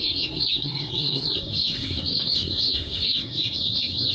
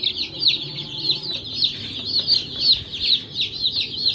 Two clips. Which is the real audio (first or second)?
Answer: second